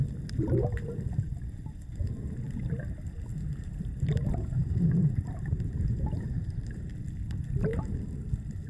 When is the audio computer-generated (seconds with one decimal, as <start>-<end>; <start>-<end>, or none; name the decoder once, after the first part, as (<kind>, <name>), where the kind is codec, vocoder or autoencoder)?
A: 3.3-6.9 (vocoder, BigVGAN v2)